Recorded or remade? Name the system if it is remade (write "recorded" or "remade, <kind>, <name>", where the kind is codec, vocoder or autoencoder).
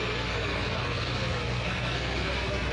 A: remade, codec, SNAC